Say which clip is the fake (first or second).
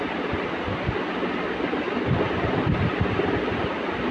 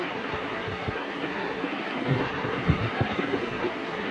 second